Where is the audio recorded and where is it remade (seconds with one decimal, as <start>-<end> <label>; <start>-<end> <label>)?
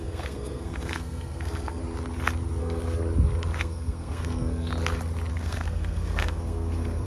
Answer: 0.0-1.8 remade; 1.8-2.6 recorded; 2.6-3.0 remade; 3.0-3.6 recorded; 3.6-4.7 remade; 4.7-5.3 recorded; 5.3-7.1 remade